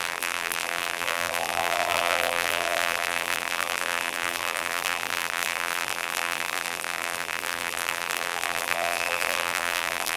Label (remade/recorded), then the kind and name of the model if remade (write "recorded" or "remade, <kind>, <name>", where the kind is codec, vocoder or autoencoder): remade, vocoder, BigVGAN v2